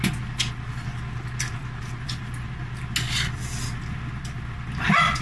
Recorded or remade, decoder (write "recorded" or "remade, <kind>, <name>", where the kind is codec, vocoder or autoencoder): recorded